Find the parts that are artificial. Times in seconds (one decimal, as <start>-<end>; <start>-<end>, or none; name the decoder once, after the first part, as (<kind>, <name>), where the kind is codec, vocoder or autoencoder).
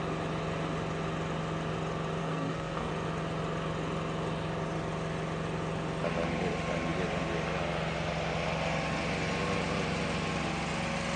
2.2-2.9 (codec, SNAC)